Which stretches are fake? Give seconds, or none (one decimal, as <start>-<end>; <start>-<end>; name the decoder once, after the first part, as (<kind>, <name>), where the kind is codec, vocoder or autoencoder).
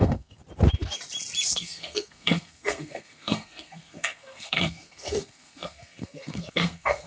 0.0-0.4 (codec, SNAC); 1.5-7.1